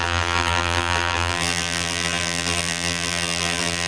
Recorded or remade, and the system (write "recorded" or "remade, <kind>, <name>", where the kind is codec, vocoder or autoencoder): remade, vocoder, BigVGAN v2